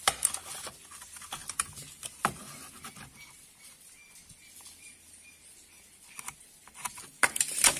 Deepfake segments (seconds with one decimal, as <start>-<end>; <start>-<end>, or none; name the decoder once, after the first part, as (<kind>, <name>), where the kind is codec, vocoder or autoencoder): none